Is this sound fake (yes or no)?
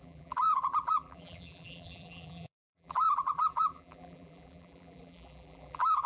yes